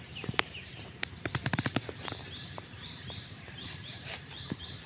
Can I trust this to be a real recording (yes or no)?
no